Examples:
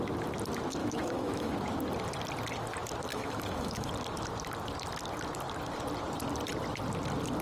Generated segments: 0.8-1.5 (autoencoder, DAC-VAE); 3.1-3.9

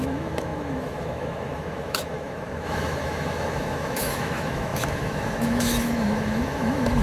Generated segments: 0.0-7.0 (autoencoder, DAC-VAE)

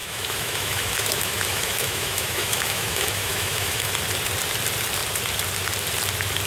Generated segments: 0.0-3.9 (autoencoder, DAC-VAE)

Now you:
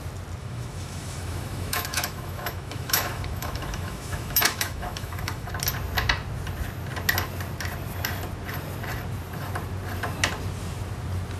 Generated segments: 0.4-5.5 (autoencoder, DAC-VAE)

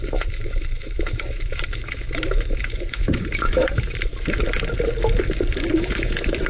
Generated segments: 0.0-4.1 (autoencoder, DAC-VAE); 5.7-6.5

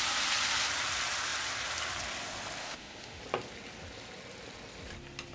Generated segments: 2.6-3.2 (autoencoder, DAC-VAE)